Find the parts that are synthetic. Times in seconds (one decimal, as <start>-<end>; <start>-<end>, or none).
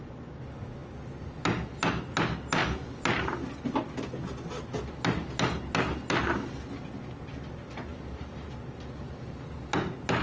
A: 7.9-9.4